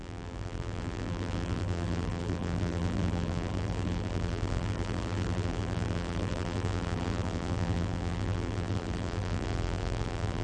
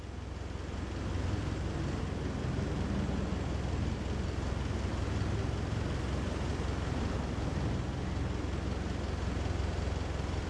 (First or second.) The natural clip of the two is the second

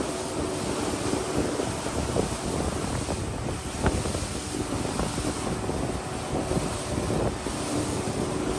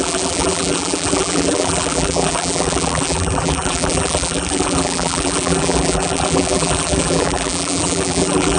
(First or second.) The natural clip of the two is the first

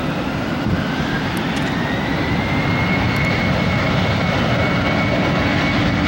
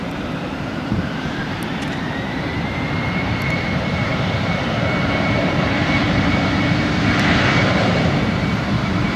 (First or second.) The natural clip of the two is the first